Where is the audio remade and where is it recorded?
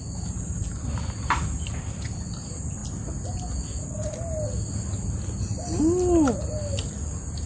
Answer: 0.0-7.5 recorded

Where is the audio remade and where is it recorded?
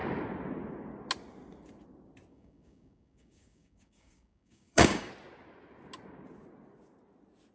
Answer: 0.0-2.3 recorded; 2.3-5.1 remade; 5.1-7.5 recorded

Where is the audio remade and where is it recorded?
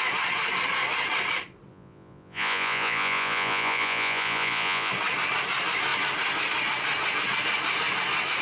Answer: 0.0-1.7 recorded; 1.7-4.9 remade; 4.9-8.4 recorded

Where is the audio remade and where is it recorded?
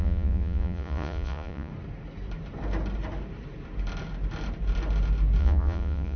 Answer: 0.0-1.7 remade; 1.7-5.4 recorded; 5.4-6.2 remade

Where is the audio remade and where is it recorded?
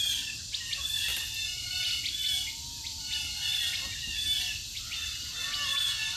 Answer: 0.0-6.2 recorded